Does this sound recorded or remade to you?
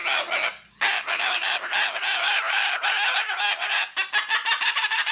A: recorded